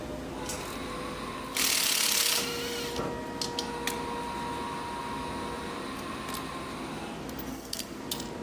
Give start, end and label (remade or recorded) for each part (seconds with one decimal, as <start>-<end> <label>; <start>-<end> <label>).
0.0-7.5 recorded; 7.5-8.0 remade; 8.0-8.4 recorded

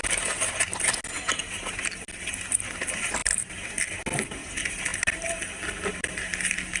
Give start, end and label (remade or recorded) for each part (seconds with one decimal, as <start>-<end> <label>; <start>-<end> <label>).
0.0-3.2 recorded; 3.2-3.7 remade; 3.7-4.9 recorded; 4.9-5.4 remade; 5.4-6.8 recorded

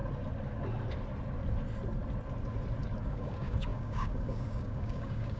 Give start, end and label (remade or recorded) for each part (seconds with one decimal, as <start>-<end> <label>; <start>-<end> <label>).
0.0-3.0 recorded; 3.0-5.4 remade

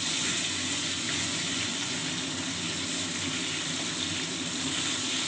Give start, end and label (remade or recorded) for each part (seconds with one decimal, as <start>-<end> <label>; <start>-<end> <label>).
0.0-2.0 remade; 2.0-5.3 recorded

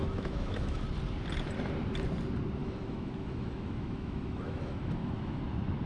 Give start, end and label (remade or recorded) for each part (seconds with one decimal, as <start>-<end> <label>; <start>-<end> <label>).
0.0-0.8 remade; 0.8-2.6 recorded; 2.6-5.4 remade; 5.4-5.9 recorded

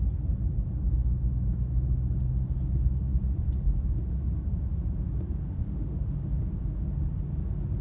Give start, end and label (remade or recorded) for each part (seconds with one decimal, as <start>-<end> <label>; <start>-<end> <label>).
0.0-5.6 recorded; 5.6-6.4 remade; 6.4-7.8 recorded

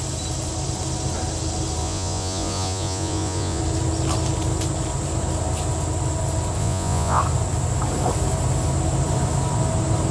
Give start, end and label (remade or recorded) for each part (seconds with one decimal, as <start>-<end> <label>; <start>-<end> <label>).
0.0-1.8 recorded; 1.8-3.6 remade; 3.6-6.6 recorded; 6.6-7.2 remade; 7.2-10.1 recorded